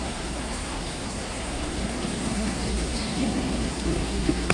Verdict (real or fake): fake